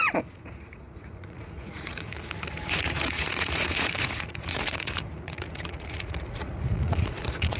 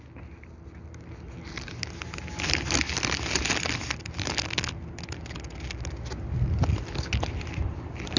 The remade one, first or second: first